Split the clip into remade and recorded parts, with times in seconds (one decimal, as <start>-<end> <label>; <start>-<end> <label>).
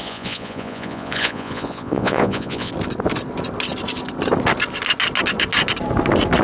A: 0.0-2.7 remade; 2.7-6.4 recorded